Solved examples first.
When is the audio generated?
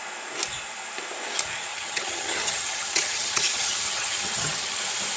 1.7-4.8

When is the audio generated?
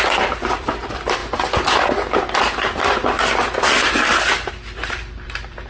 0.0-1.2; 4.5-5.7